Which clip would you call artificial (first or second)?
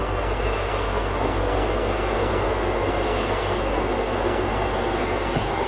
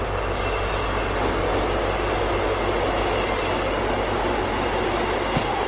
first